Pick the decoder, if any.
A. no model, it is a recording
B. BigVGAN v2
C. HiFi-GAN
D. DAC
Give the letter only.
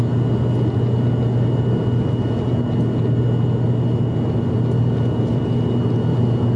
A